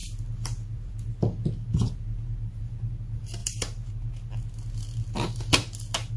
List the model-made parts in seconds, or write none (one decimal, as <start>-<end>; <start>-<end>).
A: 3.4-3.9